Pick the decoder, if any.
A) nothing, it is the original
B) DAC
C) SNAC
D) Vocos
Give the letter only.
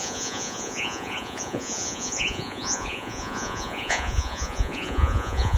D